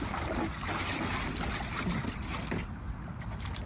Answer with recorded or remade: recorded